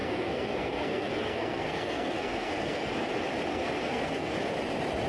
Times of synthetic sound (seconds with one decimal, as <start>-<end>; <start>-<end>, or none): 0.0-2.9; 3.5-4.3